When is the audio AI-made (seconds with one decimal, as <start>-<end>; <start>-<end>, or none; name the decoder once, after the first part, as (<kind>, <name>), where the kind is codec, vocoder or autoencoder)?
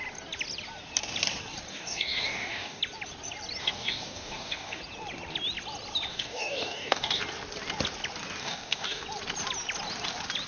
1.7-2.8 (codec, DAC); 3.6-4.8; 6.1-7.2; 8.4-9.0